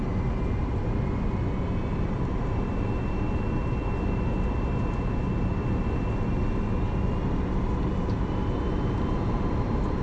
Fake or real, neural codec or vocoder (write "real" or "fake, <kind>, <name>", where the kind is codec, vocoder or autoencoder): real